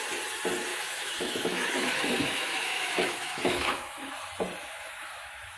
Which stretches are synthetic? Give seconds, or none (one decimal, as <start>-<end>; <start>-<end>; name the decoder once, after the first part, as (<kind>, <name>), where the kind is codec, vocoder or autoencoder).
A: 0.7-4.1 (autoencoder, DAC-VAE); 4.6-5.6

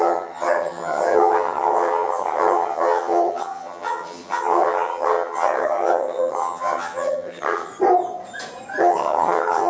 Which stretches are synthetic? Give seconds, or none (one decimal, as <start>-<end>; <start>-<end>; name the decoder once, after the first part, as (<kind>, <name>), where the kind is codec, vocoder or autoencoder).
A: 0.0-7.7 (vocoder, HiFi-GAN); 8.8-9.7